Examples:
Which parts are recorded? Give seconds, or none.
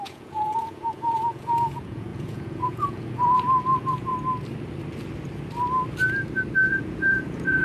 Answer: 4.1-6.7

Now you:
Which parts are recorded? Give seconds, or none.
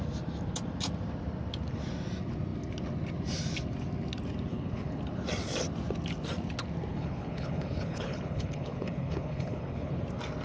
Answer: 0.0-4.5; 5.0-6.9; 10.0-10.4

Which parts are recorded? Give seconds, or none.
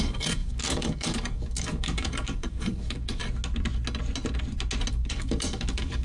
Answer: 3.2-4.9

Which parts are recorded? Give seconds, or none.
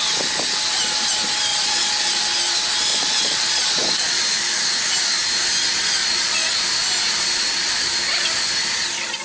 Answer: 0.0-1.5; 2.2-2.9; 4.2-6.0; 6.5-9.2